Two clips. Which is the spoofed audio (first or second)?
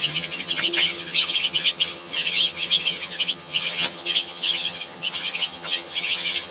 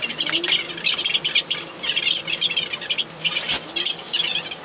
first